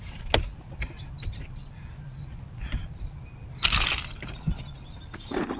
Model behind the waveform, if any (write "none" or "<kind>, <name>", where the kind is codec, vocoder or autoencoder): none